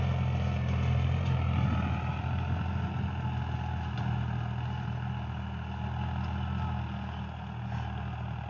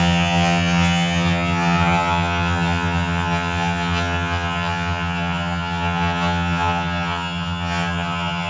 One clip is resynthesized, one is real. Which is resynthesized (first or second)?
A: second